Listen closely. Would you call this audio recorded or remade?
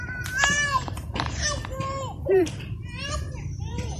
remade